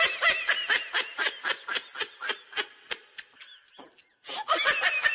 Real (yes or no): yes